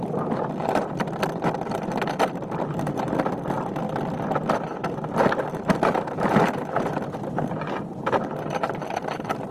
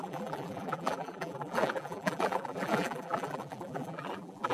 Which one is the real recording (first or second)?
first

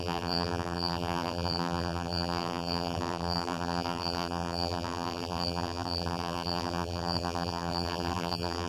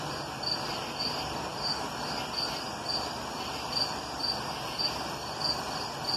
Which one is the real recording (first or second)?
second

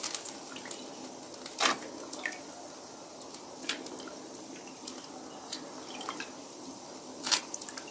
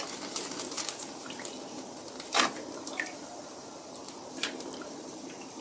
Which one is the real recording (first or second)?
first